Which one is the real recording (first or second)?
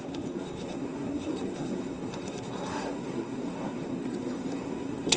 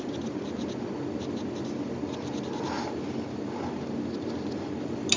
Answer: second